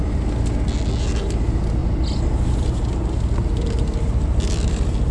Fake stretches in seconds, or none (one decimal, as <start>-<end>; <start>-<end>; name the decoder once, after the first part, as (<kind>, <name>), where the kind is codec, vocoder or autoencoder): 1.8-3.1 (vocoder, BigVGAN v2)